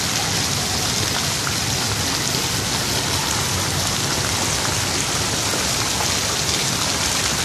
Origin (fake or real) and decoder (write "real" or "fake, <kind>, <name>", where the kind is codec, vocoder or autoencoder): real